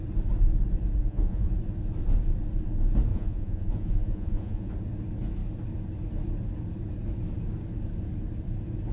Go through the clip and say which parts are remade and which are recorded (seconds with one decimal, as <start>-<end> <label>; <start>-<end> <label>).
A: 0.0-1.0 recorded; 1.0-1.5 remade; 1.5-3.1 recorded; 3.1-4.7 remade; 4.7-8.9 recorded